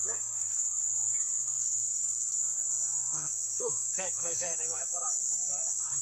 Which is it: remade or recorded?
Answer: remade